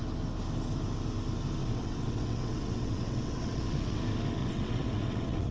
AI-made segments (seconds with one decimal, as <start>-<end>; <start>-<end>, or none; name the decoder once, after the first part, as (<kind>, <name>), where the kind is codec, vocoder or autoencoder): 1.6-4.0 (vocoder, WaveNeXt); 4.4-5.5